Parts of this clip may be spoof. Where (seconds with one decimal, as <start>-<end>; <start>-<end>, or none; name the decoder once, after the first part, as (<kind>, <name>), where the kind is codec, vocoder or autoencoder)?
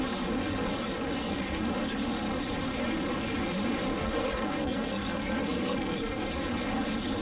1.2-1.7 (codec, SNAC); 3.9-6.3